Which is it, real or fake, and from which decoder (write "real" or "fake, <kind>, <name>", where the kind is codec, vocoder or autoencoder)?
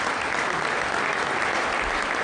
real